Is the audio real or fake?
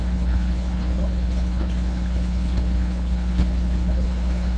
fake